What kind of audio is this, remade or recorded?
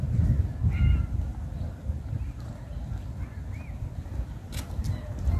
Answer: recorded